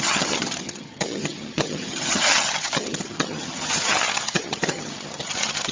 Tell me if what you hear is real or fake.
fake